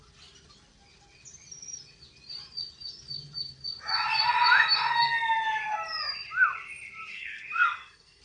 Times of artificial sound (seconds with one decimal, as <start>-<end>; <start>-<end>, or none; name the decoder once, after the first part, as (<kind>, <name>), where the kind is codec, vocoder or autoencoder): 7.1-8.2 (codec, SNAC)